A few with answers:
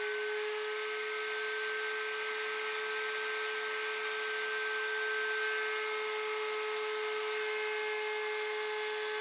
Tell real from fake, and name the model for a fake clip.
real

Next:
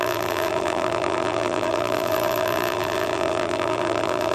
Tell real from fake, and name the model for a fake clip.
fake, vocoder, BigVGAN v2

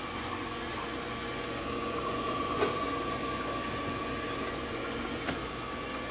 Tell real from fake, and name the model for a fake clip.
fake, vocoder, Vocos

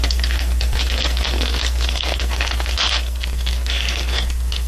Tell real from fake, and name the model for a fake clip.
fake, codec, SNAC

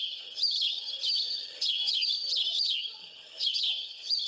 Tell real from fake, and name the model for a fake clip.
fake, vocoder, HiFi-GAN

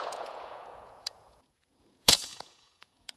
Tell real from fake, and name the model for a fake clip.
fake, vocoder, Vocos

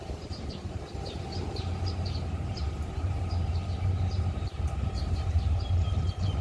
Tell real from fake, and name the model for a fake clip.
fake, vocoder, BigVGAN v2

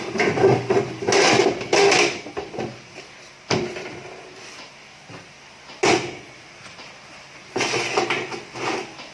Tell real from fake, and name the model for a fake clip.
real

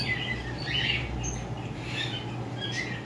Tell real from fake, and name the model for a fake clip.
real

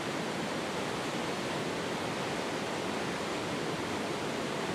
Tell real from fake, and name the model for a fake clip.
real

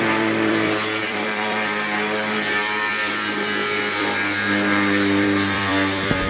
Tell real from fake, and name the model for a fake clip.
fake, vocoder, BigVGAN v2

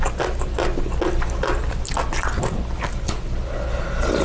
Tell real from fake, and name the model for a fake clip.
real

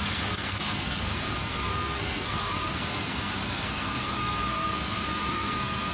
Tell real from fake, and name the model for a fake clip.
fake, codec, SNAC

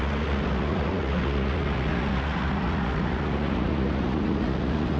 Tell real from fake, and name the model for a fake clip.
fake, vocoder, Vocos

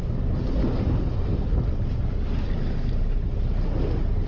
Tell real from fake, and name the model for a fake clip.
real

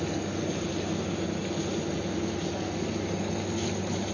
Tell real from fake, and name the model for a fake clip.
real